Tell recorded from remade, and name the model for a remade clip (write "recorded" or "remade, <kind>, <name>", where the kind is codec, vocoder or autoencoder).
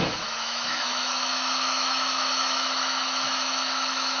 remade, autoencoder, DAC-VAE